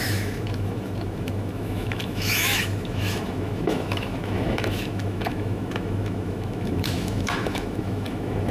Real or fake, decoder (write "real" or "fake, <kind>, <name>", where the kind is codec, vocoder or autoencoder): fake, autoencoder, DAC-VAE